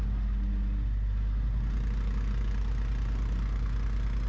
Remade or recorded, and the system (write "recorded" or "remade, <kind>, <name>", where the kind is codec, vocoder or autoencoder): recorded